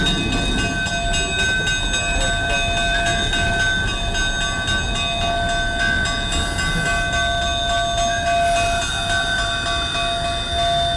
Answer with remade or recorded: recorded